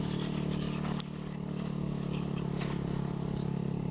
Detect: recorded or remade remade